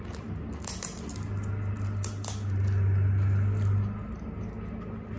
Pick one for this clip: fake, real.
real